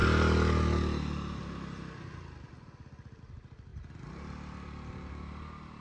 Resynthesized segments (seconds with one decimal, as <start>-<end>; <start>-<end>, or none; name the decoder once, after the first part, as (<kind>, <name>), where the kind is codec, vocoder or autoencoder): none